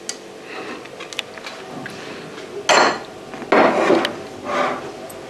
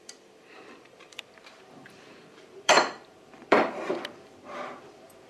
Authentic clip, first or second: first